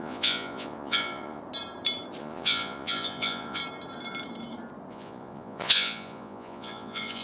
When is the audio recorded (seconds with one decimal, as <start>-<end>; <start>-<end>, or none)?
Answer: 1.4-2.2; 3.6-4.9